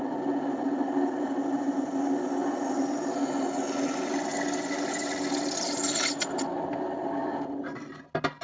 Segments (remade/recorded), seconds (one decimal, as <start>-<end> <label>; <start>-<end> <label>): 0.0-8.4 recorded